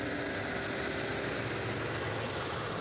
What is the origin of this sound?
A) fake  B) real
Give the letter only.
B